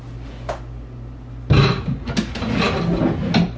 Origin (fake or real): real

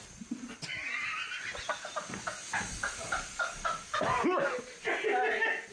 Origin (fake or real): real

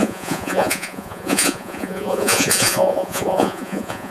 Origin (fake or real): fake